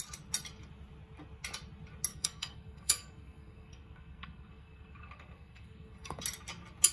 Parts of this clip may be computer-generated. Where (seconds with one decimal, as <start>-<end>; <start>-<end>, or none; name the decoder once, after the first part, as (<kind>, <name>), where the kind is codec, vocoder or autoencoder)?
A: 2.1-6.2 (codec, SNAC)

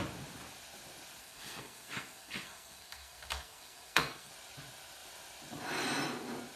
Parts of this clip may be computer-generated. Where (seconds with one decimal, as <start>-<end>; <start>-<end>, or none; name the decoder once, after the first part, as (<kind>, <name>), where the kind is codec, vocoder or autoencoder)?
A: 1.2-4.3 (codec, SNAC)